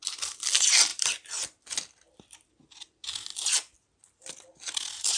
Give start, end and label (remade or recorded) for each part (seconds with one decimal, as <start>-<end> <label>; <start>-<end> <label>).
0.0-5.2 recorded